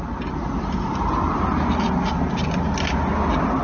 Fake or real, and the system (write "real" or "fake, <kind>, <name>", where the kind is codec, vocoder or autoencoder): real